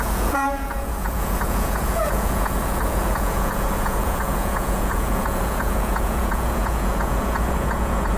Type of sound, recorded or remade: remade